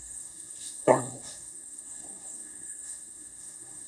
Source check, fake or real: fake